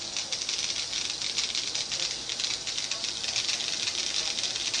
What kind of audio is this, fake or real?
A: real